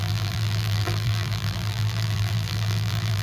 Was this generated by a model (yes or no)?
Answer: yes